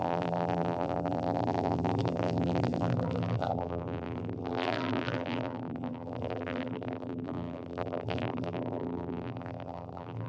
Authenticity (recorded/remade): remade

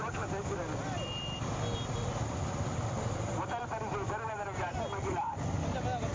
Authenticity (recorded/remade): recorded